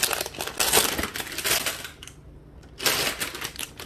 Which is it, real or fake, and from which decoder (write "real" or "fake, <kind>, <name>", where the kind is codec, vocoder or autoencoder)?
real